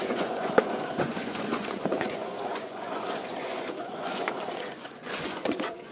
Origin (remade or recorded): remade